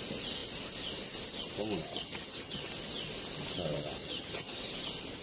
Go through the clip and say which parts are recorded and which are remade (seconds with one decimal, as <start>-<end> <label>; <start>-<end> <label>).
0.0-1.9 recorded; 1.9-2.7 remade; 2.7-4.0 recorded; 4.0-4.6 remade; 4.6-5.2 recorded